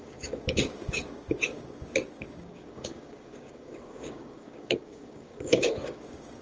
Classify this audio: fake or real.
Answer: fake